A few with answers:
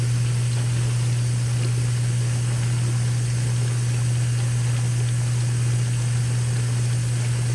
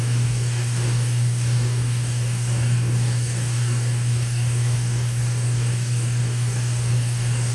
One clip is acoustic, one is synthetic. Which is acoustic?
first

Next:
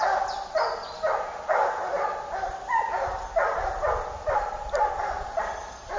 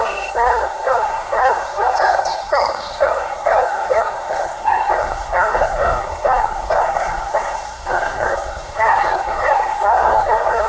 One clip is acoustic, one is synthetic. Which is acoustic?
first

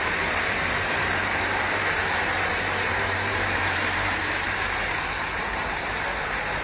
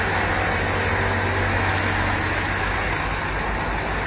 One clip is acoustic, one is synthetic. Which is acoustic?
second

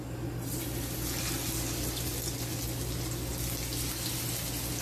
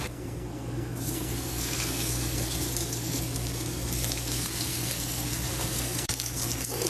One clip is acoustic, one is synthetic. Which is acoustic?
first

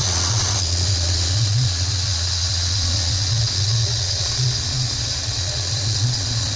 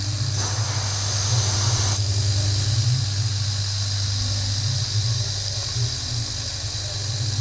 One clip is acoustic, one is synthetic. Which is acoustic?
second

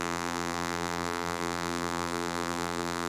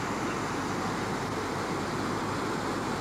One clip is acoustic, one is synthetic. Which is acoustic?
second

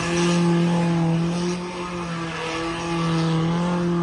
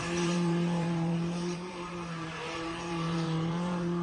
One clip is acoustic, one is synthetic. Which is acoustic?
first